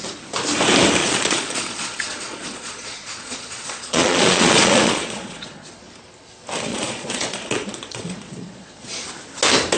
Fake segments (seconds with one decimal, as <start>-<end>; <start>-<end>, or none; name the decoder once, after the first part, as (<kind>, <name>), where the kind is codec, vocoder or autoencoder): 1.0-5.7 (vocoder, Vocos); 6.7-9.1

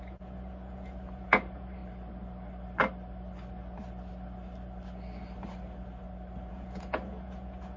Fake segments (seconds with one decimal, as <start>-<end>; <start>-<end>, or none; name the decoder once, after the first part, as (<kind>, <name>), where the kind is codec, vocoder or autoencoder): 0.0-1.8 (vocoder, Vocos); 6.5-7.8

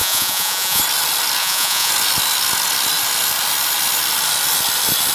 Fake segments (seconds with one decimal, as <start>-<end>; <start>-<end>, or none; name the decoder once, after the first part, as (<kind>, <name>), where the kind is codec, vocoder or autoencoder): 0.0-0.8 (vocoder, Vocos); 1.4-1.9

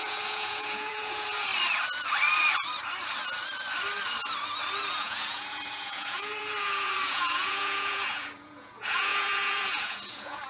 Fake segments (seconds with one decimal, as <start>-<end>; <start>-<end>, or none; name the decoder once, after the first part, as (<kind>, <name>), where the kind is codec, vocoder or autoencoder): 0.0-1.5 (vocoder, Vocos); 5.0-10.5

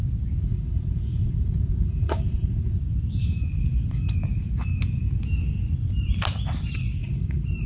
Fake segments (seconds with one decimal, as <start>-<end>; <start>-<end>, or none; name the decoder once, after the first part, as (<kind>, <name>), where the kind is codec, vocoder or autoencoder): 0.4-2.8 (vocoder, Vocos); 7.0-7.7